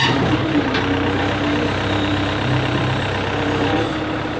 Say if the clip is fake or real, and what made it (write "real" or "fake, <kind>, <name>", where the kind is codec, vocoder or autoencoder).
fake, vocoder, BigVGAN v2